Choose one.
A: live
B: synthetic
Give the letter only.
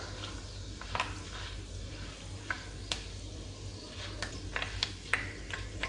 A